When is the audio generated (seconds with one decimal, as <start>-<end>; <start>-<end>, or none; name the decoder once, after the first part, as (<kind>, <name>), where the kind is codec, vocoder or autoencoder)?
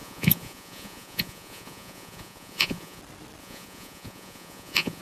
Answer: 0.0-3.0 (vocoder, Vocos); 3.4-5.0